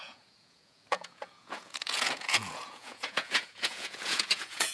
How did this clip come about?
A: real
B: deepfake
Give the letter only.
B